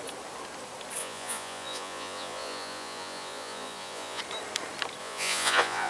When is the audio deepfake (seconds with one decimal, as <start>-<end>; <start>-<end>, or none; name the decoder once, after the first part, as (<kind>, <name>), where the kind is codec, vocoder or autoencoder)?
1.0-4.2 (vocoder, Vocos); 5.0-5.9